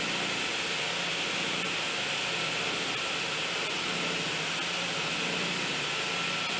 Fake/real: real